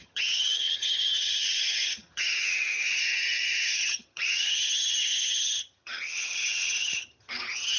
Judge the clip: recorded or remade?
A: remade